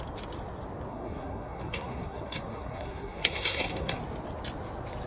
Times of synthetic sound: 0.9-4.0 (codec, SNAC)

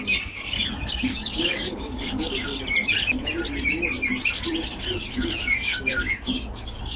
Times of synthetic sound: 0.0-2.5 (codec, DAC); 5.0-7.0

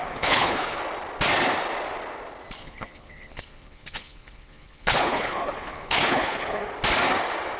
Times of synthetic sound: 0.0-0.8 (codec, HILCodec); 2.6-6.7

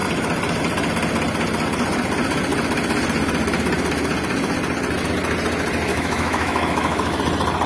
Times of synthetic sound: 5.9-7.2 (autoencoder, DAC-VAE)

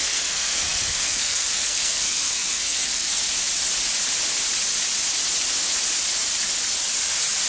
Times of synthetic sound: 0.0-3.2 (codec, SNAC)

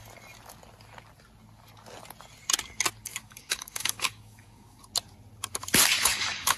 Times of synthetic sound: 3.1-4.8 (codec, DAC); 6.1-6.6